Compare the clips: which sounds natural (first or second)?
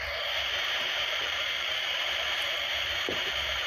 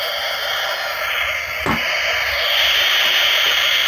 second